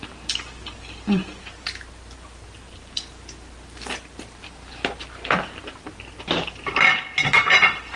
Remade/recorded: recorded